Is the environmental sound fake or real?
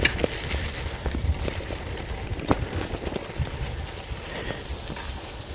real